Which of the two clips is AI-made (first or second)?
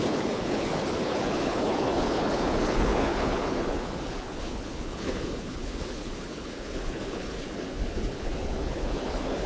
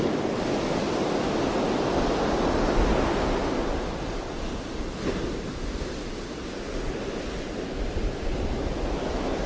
first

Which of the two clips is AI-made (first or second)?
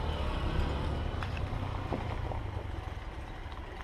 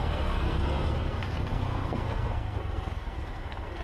second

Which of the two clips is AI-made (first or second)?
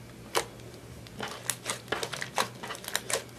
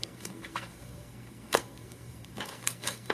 second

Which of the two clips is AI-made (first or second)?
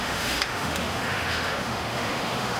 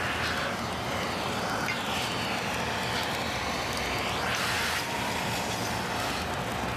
first